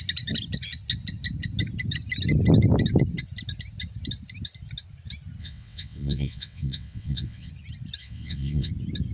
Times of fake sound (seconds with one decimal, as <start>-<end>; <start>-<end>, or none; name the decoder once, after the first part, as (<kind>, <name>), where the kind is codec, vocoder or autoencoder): 5.4-7.5 (vocoder, WaveNeXt); 8.0-8.7